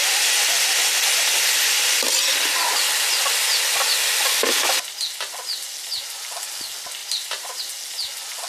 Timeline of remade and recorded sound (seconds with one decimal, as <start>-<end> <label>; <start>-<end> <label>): 0.0-7.0 recorded; 7.0-7.6 remade; 7.6-8.5 recorded